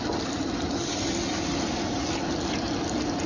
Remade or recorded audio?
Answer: recorded